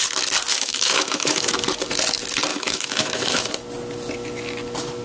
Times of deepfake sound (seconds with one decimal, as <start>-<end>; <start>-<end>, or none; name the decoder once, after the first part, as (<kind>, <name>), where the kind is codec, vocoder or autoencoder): 0.5-1.5 (autoencoder, DAC-VAE); 2.5-3.5